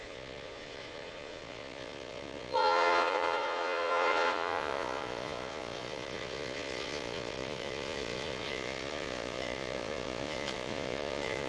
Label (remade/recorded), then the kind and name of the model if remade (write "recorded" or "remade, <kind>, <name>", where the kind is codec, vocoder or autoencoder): remade, vocoder, Vocos